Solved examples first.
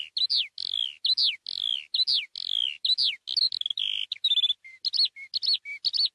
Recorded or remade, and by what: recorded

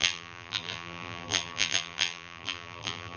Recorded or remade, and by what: remade, vocoder, BigVGAN v2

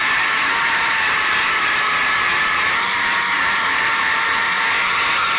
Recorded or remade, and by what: remade, vocoder, BigVGAN v2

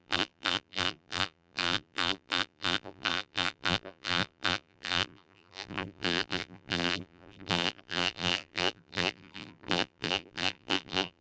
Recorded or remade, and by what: remade, vocoder, BigVGAN v2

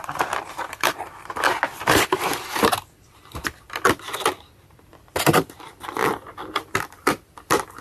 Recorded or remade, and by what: remade, vocoder, BigVGAN v2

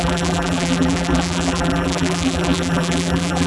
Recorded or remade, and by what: remade, vocoder, BigVGAN v2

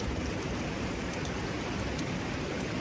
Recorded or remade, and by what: remade, vocoder, BigVGAN v2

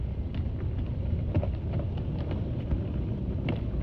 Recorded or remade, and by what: recorded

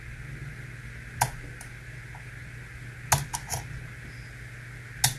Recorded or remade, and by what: recorded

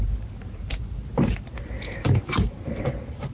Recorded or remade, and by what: remade, vocoder, BigVGAN v2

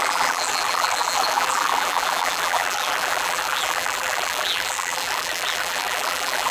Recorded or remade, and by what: remade, vocoder, BigVGAN v2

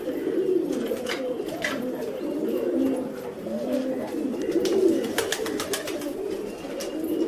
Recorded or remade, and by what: recorded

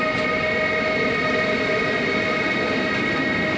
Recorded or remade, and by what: recorded